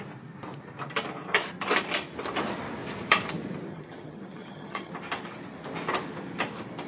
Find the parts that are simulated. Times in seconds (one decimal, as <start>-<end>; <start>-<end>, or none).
3.7-4.9